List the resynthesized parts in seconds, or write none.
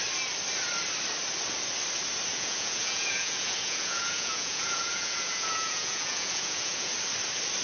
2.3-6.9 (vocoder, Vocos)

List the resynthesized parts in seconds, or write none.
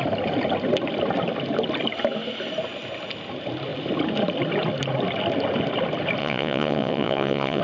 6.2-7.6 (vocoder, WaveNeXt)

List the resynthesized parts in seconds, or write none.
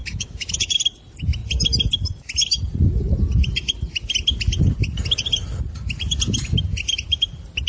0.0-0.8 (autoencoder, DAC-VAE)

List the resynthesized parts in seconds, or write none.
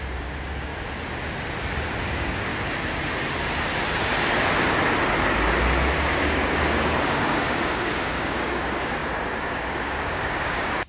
0.0-0.7 (codec, DAC); 2.1-2.5; 6.1-10.9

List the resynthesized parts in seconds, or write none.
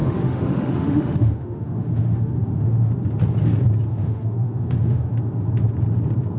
0.0-2.9 (autoencoder, DAC-VAE); 3.9-5.1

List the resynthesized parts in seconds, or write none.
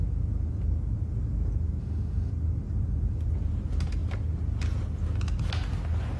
1.8-2.3 (autoencoder, DAC-VAE)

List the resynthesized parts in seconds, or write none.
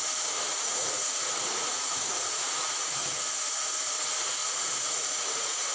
0.5-3.9 (vocoder, Vocos); 4.4-5.7